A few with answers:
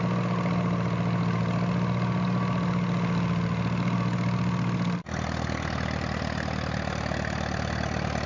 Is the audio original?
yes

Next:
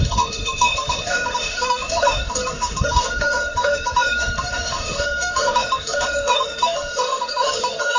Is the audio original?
no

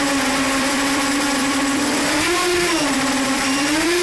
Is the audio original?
no